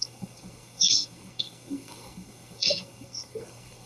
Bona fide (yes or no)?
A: no